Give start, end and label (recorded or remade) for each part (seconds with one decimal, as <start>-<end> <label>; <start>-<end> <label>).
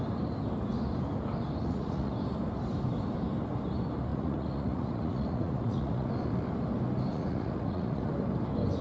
0.0-1.6 recorded; 1.6-2.1 remade; 2.1-4.1 recorded; 4.1-6.1 remade; 6.1-7.1 recorded; 7.1-8.1 remade; 8.1-8.8 recorded